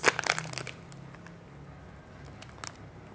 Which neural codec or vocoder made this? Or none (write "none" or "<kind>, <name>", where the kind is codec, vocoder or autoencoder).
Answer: none